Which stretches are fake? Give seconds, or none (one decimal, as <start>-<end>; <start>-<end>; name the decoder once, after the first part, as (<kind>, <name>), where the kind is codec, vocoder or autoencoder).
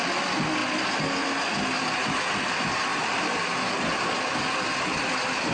2.9-4.0 (vocoder, BigVGAN v2)